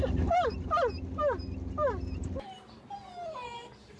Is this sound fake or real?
real